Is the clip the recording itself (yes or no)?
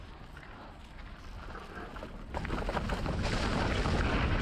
yes